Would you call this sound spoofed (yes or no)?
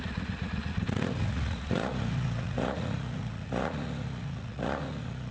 yes